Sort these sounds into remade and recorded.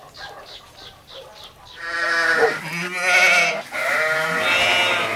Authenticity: recorded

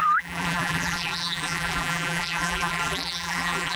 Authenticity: remade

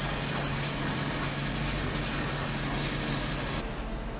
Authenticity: recorded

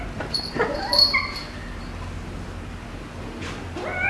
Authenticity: recorded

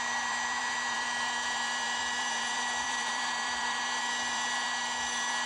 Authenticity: remade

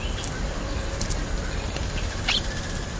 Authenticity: remade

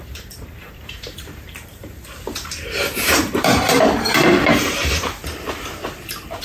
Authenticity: remade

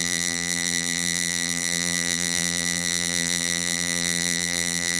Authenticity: remade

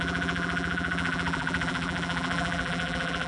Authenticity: remade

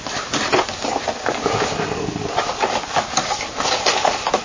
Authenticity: recorded